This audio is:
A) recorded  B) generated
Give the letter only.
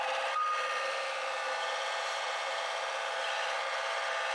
A